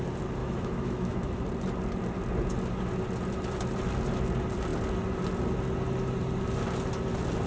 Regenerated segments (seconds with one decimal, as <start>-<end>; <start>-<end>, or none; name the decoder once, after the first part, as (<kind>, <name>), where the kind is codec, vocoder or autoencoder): 0.4-1.3 (autoencoder, DAC-VAE)

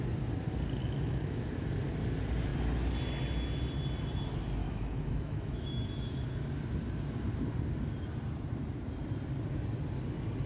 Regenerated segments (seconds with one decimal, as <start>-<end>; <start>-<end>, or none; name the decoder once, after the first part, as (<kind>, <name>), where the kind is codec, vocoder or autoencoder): 0.8-1.4 (autoencoder, DAC-VAE); 4.6-6.3